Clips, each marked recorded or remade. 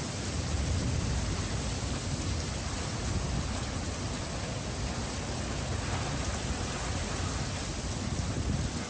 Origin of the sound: recorded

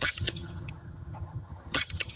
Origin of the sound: remade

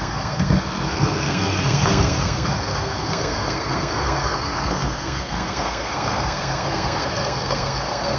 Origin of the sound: remade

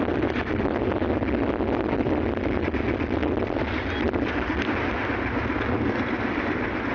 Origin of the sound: recorded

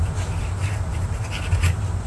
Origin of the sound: recorded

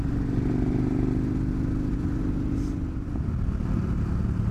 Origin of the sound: recorded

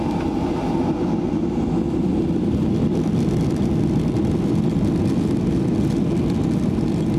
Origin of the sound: recorded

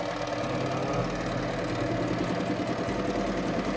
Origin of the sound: recorded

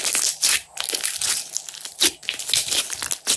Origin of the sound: recorded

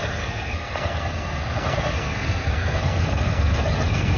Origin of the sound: remade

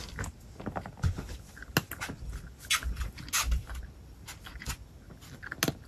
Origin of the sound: recorded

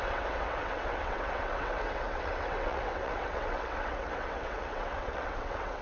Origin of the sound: remade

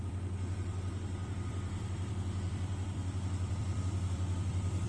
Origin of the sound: remade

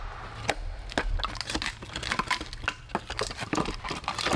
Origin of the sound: recorded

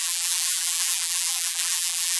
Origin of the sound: remade